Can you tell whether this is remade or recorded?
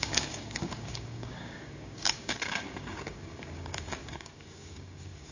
remade